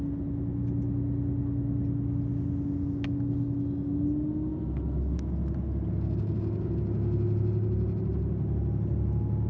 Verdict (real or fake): real